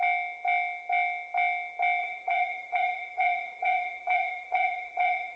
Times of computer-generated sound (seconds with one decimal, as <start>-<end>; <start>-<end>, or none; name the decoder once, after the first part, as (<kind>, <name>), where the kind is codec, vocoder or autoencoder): 2.0-5.4 (vocoder, Vocos)